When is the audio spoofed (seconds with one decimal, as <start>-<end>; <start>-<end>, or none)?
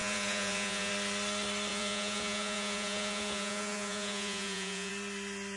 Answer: 0.0-0.9; 1.7-4.9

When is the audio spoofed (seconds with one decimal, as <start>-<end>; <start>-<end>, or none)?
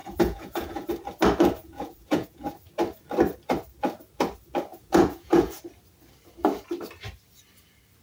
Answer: 0.0-0.9; 1.6-2.5; 4.7-5.6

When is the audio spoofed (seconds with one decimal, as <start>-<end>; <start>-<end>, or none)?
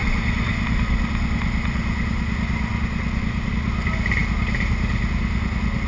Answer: none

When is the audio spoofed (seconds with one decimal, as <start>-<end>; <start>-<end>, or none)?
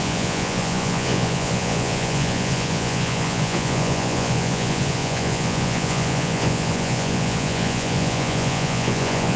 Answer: 0.0-9.4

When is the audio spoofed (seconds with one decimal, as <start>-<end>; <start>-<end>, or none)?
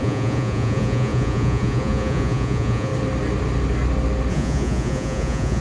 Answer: 0.0-2.9; 4.3-5.6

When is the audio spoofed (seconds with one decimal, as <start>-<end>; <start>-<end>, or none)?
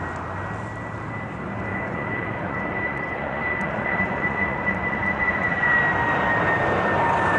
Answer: 1.7-5.8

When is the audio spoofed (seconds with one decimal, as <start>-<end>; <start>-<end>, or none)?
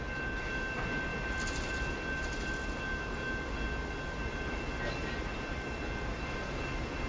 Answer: none